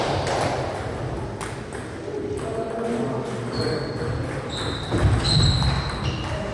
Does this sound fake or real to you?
real